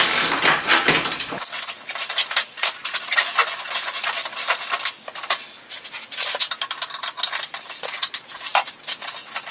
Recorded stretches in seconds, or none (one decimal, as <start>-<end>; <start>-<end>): 0.0-2.8; 3.9-9.5